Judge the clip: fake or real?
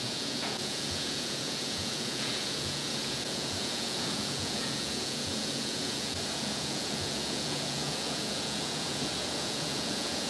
fake